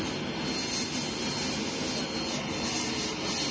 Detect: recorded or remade recorded